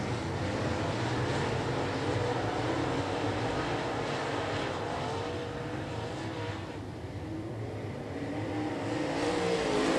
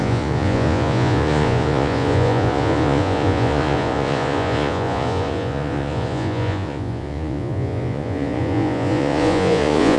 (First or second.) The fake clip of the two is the second